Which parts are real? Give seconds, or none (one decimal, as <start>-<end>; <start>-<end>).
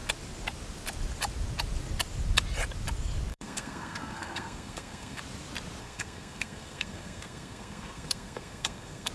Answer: 0.0-3.3; 5.2-5.8